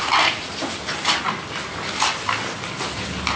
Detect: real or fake real